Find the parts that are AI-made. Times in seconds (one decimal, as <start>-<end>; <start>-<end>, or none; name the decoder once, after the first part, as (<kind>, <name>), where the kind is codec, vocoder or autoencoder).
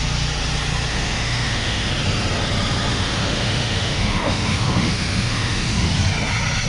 0.9-1.9 (autoencoder, DAC-VAE); 2.9-5.9